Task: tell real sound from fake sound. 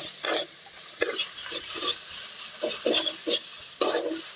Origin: real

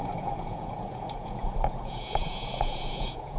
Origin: fake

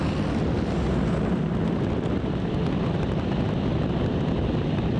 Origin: real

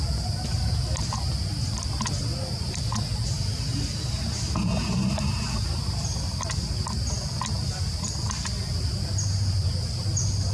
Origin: real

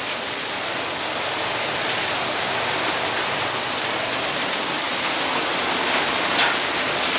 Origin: real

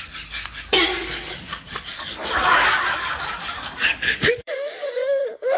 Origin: fake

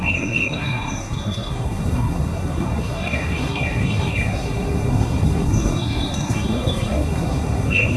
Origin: fake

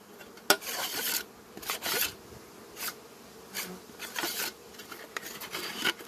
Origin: real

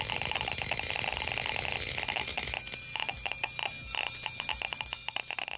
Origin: real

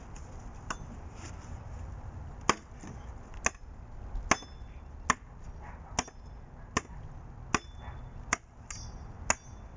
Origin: real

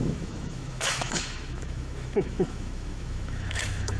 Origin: fake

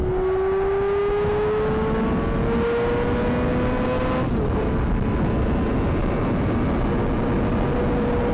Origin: real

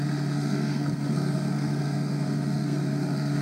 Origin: fake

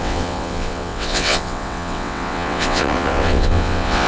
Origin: fake